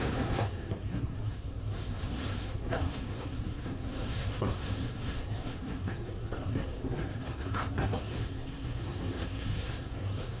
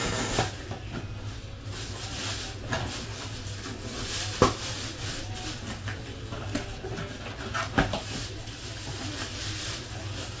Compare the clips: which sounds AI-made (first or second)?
first